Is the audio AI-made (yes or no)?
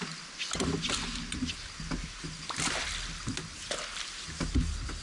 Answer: no